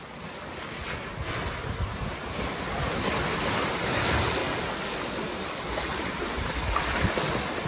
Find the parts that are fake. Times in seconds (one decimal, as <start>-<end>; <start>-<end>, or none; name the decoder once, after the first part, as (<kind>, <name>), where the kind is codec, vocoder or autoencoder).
none